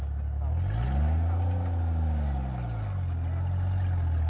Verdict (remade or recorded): recorded